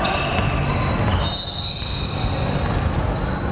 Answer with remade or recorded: recorded